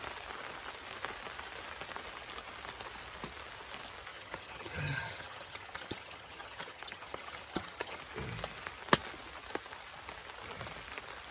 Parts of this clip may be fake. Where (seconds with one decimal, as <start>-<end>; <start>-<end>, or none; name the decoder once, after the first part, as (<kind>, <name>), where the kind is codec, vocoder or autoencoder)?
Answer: 4.1-8.0 (vocoder, HiFi-GAN)